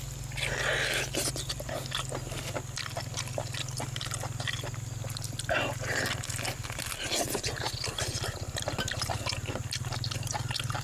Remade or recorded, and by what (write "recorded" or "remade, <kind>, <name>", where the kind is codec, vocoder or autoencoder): recorded